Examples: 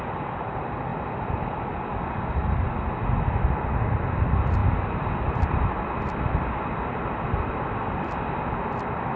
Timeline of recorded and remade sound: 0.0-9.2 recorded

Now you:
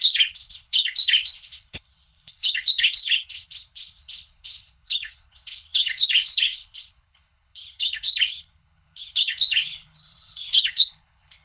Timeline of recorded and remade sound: 0.0-11.4 remade